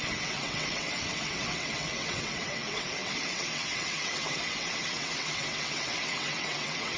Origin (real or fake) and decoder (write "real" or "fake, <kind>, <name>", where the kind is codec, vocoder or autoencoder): fake, vocoder, WaveNeXt